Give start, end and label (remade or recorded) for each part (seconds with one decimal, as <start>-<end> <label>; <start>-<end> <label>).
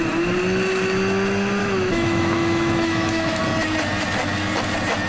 0.0-1.6 recorded; 1.6-3.4 remade; 3.4-5.1 recorded